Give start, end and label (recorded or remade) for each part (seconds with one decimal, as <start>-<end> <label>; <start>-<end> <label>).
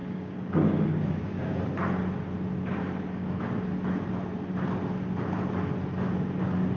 0.0-1.6 remade; 1.6-2.8 recorded; 2.8-3.4 remade; 3.4-6.8 recorded